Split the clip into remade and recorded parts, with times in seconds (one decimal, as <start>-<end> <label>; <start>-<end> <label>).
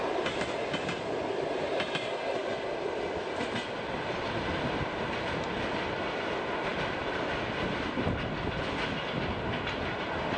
0.0-6.7 recorded; 6.7-8.6 remade; 8.6-10.4 recorded